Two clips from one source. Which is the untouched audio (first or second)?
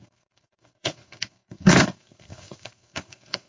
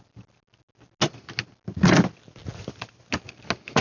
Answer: second